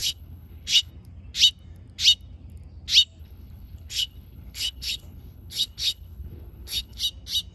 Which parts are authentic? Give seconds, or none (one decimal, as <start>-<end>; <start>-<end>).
0.9-3.2; 7.0-7.5